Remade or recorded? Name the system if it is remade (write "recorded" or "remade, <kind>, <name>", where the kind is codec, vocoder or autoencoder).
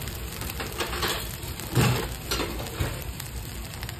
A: remade, vocoder, BigVGAN v2